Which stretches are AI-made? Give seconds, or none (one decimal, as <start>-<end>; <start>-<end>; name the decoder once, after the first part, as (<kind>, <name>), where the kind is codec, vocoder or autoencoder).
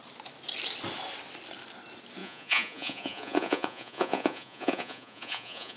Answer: 2.2-5.8 (vocoder, Vocos)